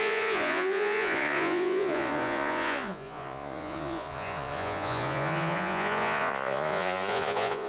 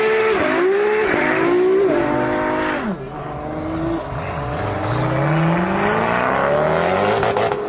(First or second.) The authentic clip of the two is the second